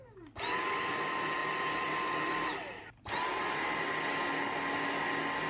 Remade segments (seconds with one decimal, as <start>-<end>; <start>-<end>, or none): none